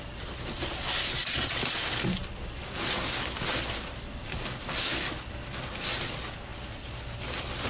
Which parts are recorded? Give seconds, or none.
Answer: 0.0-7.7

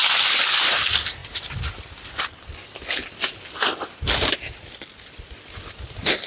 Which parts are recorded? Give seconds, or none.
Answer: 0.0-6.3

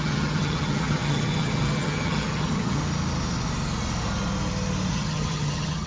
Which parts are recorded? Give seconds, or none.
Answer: 2.8-4.9

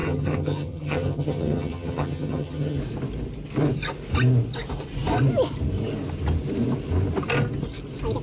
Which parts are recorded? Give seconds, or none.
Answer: 2.8-8.2

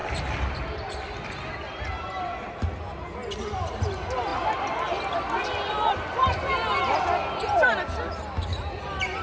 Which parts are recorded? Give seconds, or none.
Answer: 0.0-9.2

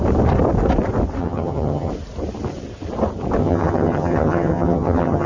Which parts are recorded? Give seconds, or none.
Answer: 0.0-1.2; 1.9-3.4

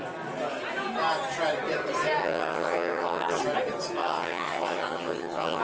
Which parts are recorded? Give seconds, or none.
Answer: 0.0-2.2; 3.4-4.0